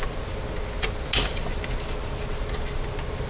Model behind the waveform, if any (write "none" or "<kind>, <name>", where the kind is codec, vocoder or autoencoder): none